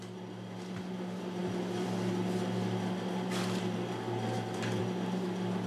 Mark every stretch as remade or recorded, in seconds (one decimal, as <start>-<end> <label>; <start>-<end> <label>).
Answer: 0.0-5.7 recorded